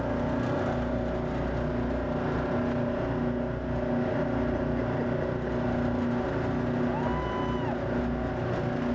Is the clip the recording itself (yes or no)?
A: yes